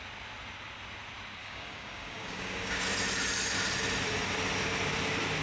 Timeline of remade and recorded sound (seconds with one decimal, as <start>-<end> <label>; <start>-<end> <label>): 0.0-1.4 recorded; 1.4-2.8 remade; 2.8-5.4 recorded